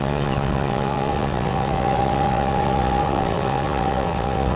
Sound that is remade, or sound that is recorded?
remade